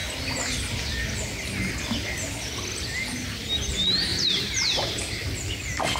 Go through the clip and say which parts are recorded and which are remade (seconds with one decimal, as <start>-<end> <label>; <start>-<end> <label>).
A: 0.0-4.1 recorded; 4.1-4.8 remade; 4.8-6.0 recorded